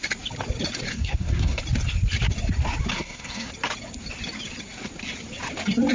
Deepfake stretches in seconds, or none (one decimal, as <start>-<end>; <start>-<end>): 0.9-1.6; 2.9-3.5